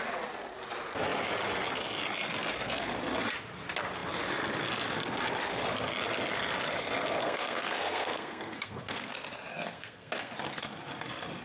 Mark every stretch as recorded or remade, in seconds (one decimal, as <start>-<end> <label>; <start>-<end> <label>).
0.0-7.2 recorded; 7.2-9.1 remade; 9.1-9.5 recorded; 9.5-10.3 remade; 10.3-11.4 recorded